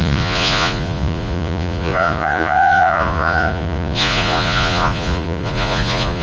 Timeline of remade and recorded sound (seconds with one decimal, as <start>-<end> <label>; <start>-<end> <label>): 0.0-6.2 remade